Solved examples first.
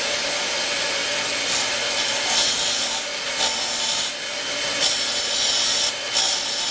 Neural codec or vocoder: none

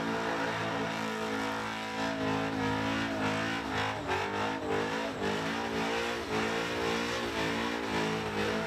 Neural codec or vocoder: none